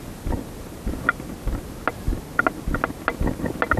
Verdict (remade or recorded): recorded